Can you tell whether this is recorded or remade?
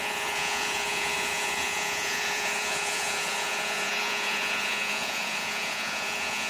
remade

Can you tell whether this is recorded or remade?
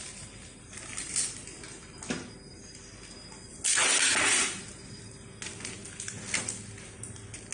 recorded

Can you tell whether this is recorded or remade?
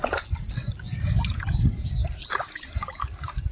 recorded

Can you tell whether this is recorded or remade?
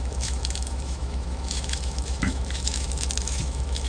remade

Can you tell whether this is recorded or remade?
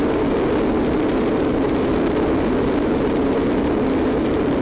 recorded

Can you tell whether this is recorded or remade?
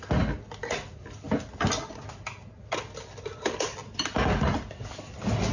recorded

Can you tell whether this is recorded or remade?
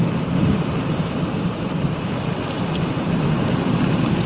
recorded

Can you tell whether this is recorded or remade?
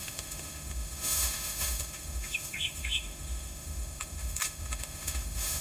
remade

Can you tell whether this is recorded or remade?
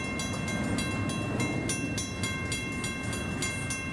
recorded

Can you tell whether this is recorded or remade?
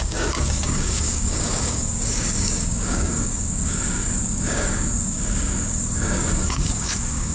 remade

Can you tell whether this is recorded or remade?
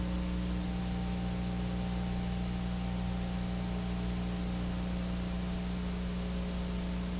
recorded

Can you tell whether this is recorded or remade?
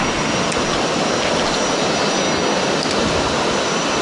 recorded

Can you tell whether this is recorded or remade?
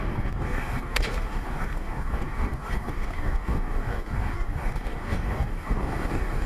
remade